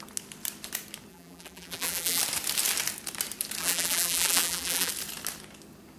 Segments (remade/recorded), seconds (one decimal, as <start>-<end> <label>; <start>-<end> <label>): 0.0-1.1 recorded; 1.1-2.2 remade; 2.2-3.6 recorded; 3.6-4.9 remade; 4.9-6.0 recorded